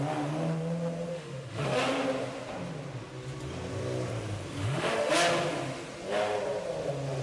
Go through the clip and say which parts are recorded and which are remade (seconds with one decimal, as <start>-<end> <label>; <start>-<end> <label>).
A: 0.0-1.1 recorded; 1.1-1.8 remade; 1.8-4.6 recorded; 4.6-5.1 remade; 5.1-7.2 recorded